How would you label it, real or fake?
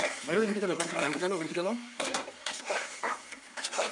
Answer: fake